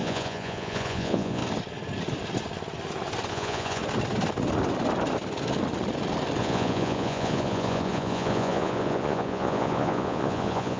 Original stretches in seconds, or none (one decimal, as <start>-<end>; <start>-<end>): 1.4-3.3; 3.8-6.4

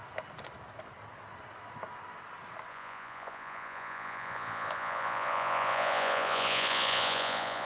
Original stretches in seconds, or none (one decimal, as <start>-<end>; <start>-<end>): 0.0-2.7

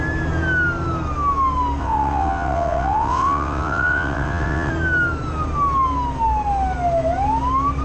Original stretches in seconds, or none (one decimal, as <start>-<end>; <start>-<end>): 0.0-1.8; 4.7-7.8

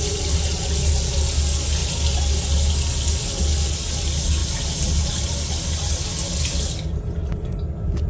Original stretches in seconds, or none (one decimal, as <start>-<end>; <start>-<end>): 0.0-8.1

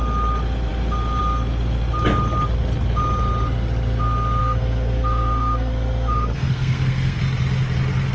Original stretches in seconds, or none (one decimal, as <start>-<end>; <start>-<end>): 0.0-4.4; 7.2-8.1